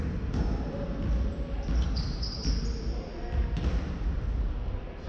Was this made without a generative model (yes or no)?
yes